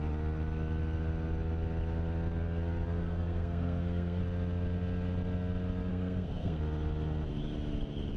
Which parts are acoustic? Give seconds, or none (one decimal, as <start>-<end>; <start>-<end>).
0.0-3.0; 4.2-5.9; 6.6-8.2